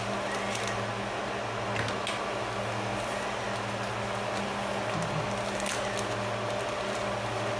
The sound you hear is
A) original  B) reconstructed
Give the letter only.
A